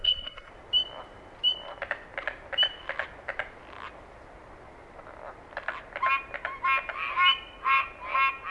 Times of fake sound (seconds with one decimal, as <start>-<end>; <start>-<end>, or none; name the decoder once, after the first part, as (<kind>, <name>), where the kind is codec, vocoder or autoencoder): 0.0-0.5 (codec, SNAC)